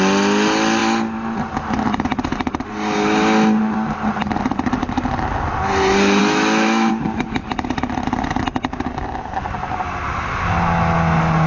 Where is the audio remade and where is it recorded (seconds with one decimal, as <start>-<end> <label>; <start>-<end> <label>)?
0.0-6.2 recorded; 6.2-6.9 remade; 6.9-11.5 recorded